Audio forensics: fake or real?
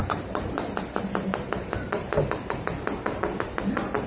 real